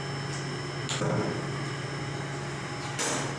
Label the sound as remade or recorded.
recorded